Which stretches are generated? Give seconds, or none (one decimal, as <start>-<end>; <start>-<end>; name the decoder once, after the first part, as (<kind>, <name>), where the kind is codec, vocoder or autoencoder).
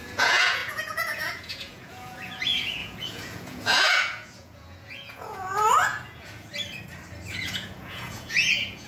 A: 0.0-6.5 (vocoder, Vocos); 7.3-8.9